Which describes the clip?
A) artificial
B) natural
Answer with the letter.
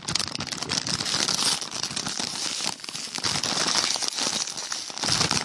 B